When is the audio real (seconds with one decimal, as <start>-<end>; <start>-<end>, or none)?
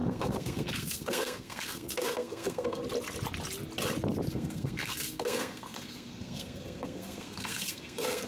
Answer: 2.8-4.3